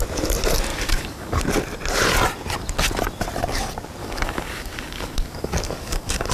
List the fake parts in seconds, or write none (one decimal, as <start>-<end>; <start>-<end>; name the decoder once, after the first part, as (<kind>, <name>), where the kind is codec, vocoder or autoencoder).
0.7-1.4 (codec, DAC); 4.0-6.3